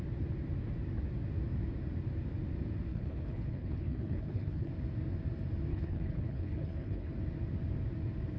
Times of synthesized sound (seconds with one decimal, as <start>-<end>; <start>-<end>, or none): 2.9-4.7; 5.7-7.1